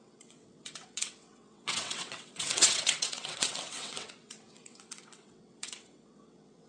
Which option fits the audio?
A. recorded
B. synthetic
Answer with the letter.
B